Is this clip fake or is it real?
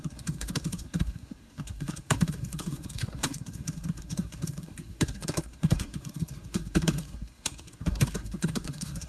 fake